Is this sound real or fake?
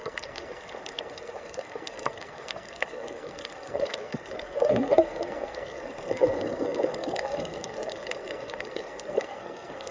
fake